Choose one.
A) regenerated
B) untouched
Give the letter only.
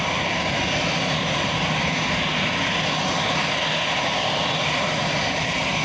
B